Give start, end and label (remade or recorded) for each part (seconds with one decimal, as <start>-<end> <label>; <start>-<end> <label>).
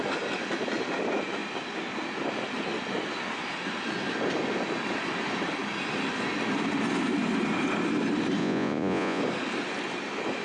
0.0-8.4 recorded; 8.4-9.2 remade; 9.2-10.4 recorded